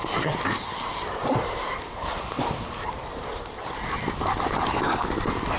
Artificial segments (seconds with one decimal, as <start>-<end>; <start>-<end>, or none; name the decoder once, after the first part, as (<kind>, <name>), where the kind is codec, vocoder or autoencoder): 1.2-3.5 (vocoder, BigVGAN v2)